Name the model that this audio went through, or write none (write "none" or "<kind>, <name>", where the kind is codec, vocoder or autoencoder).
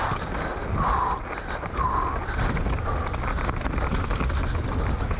none